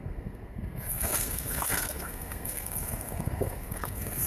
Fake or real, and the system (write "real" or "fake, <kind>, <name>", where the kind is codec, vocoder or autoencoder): fake, codec, SNAC